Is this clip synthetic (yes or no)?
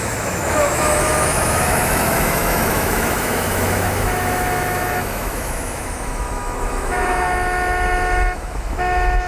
yes